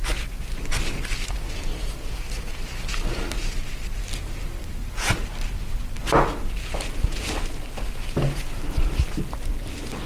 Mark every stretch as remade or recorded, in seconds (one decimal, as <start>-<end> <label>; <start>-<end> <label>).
0.0-10.1 recorded